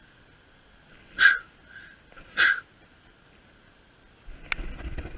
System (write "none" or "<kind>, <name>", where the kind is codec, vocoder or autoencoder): none